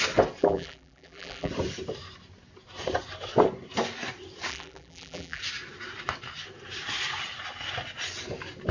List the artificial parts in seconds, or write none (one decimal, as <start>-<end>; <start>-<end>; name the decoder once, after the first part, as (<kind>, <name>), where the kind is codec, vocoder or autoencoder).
0.4-1.5 (vocoder, BigVGAN v2); 4.5-5.4